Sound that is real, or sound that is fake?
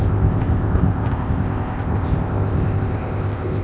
fake